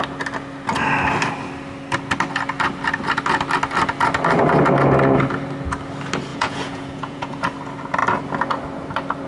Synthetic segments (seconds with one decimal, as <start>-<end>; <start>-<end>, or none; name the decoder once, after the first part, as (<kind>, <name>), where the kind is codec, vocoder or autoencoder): 6.3-7.4 (vocoder, Vocos)